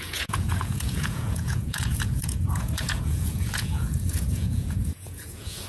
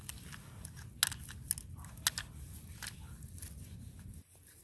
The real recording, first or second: second